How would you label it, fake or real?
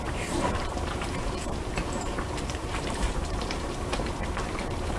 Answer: fake